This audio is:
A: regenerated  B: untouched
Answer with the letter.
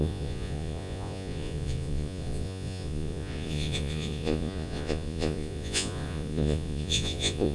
A